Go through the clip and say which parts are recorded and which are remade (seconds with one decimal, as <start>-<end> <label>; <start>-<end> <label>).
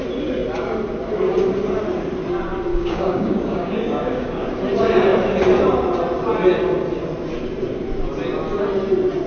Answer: 0.0-2.7 recorded; 2.7-4.5 remade; 4.5-9.3 recorded